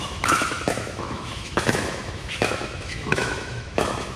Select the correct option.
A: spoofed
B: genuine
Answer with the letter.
A